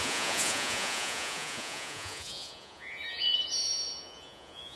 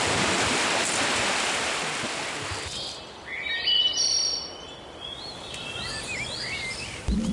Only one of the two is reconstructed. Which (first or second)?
first